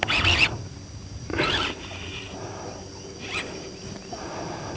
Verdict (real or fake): real